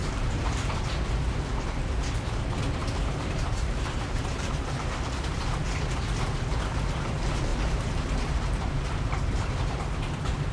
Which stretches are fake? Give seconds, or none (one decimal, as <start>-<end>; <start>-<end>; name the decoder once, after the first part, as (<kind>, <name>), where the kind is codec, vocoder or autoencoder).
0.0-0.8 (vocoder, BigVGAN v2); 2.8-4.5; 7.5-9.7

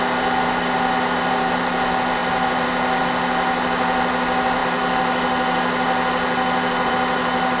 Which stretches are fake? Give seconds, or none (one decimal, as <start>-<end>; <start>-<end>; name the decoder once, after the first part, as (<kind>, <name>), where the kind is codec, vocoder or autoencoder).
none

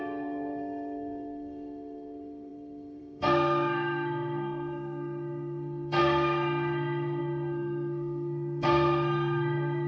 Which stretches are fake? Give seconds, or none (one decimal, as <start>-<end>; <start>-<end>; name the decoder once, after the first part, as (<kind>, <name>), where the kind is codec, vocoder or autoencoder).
0.0-9.9 (codec, SNAC)

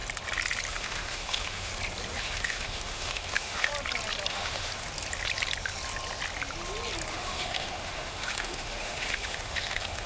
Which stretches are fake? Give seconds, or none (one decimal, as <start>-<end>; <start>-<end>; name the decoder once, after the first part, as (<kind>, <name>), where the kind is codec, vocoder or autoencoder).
0.7-1.7 (autoencoder, DAC-VAE); 2.2-3.7; 4.3-4.7; 7.1-10.1

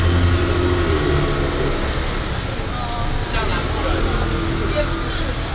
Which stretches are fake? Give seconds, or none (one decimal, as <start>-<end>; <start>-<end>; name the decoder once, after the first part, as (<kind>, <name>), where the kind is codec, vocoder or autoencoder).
none

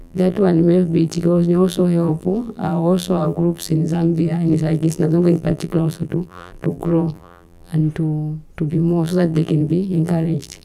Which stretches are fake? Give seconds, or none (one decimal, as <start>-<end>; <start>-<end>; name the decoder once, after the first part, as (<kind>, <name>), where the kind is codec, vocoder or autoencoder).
0.0-7.8 (vocoder, BigVGAN v2); 8.7-10.6